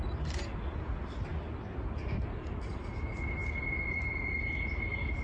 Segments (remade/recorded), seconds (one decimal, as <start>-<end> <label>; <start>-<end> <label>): 0.0-5.2 recorded